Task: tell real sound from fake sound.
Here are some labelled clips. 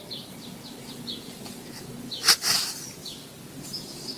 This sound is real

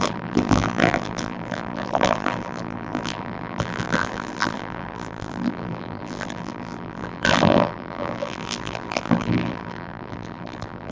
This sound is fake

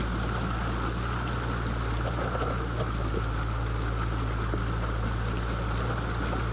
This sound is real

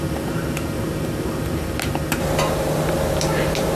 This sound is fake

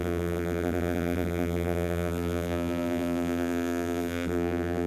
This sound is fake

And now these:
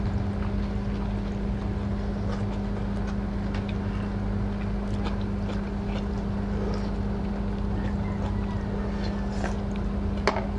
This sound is real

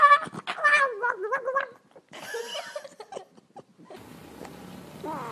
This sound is real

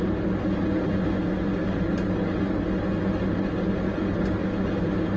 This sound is real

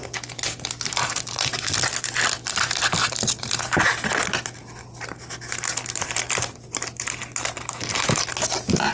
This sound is real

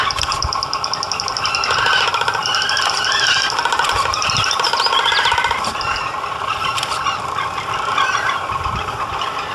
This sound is fake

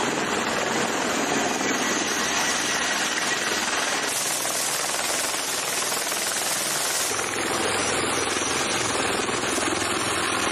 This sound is real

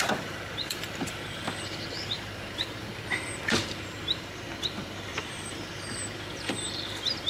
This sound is fake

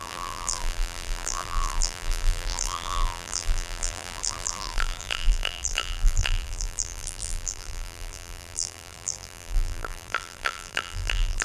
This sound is fake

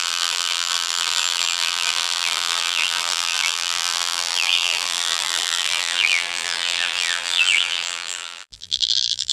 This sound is fake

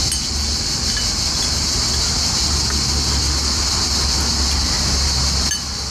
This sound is real